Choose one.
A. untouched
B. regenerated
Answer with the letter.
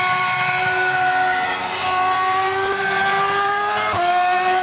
B